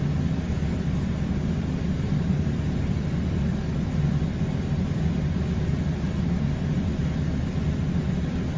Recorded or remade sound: recorded